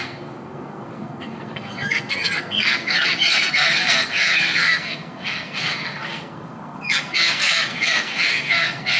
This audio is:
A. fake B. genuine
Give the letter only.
A